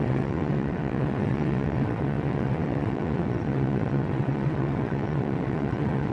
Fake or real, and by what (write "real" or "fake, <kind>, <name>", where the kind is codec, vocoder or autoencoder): fake, vocoder, WaveNeXt